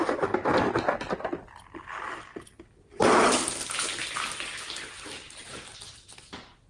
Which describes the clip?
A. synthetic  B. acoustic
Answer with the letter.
B